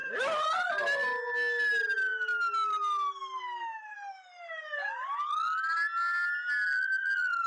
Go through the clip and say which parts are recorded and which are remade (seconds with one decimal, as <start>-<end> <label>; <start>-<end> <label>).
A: 0.0-0.7 remade; 0.7-3.9 recorded; 3.9-4.5 remade; 4.5-7.5 recorded